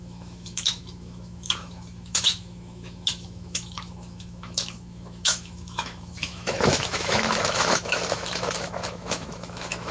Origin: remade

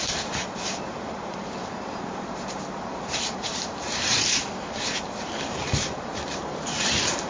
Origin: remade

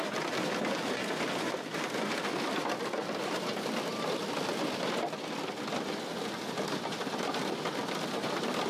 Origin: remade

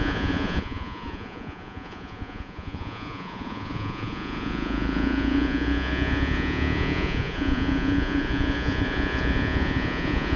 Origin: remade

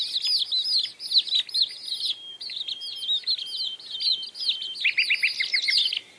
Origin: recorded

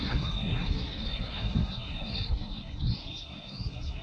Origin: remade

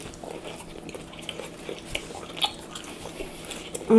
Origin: recorded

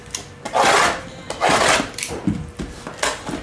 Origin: recorded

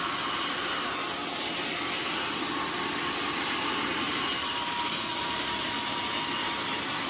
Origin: recorded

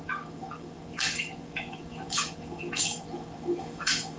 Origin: remade